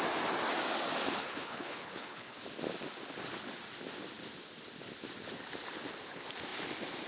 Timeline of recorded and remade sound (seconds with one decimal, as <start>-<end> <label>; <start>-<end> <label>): 0.0-1.1 recorded; 1.1-2.4 remade; 2.4-7.1 recorded